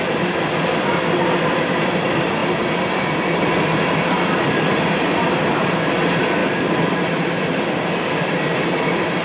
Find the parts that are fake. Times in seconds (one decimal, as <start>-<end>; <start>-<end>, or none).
0.0-9.2